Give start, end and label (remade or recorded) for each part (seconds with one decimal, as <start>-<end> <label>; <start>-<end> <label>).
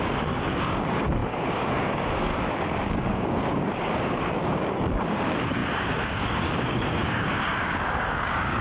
0.0-2.3 remade; 2.3-2.9 recorded; 2.9-8.6 remade